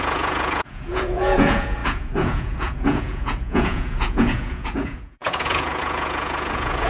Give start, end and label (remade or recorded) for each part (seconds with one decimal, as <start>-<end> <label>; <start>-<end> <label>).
0.0-6.9 remade